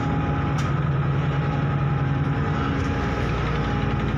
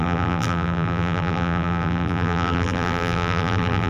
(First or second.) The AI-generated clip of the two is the second